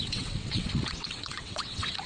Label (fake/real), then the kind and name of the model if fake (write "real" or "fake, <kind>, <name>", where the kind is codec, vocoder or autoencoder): fake, vocoder, WaveNeXt